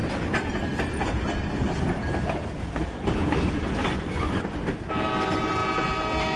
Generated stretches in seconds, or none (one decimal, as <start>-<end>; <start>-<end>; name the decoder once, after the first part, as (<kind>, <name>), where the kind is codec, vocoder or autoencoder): 3.8-4.6 (vocoder, Vocos)